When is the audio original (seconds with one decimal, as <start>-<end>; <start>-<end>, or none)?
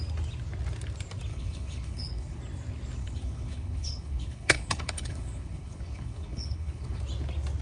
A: 0.0-1.3; 2.4-3.0; 7.0-7.6